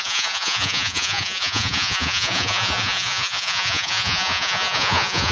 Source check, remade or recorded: remade